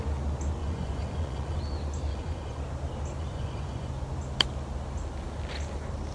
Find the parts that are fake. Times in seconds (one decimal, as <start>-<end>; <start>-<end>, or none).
0.6-1.6; 2.1-2.6; 3.2-3.9